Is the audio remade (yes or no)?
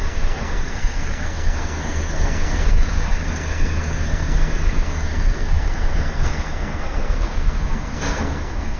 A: yes